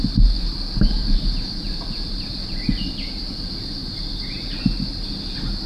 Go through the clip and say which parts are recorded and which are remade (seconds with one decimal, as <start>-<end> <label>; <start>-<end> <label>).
0.0-5.7 recorded